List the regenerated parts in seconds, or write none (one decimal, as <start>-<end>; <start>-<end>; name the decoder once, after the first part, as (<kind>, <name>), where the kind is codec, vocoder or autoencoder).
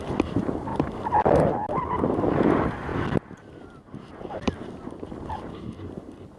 none